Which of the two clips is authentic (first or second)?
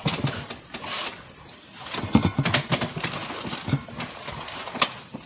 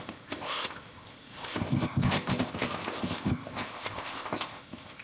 first